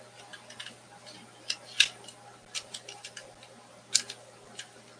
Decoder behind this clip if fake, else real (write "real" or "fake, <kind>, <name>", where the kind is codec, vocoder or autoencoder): real